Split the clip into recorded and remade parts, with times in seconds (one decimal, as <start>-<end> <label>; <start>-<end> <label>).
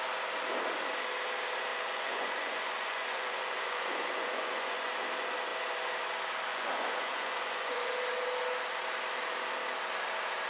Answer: 0.0-1.7 recorded; 1.7-4.9 remade; 4.9-6.5 recorded; 6.5-7.9 remade; 7.9-10.5 recorded